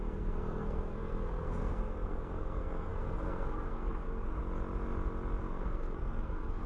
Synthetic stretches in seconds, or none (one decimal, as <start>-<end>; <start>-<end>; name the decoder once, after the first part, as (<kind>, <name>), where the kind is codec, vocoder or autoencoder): 0.0-4.4 (codec, SNAC); 5.4-6.7